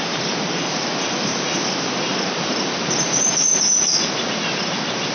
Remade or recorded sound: remade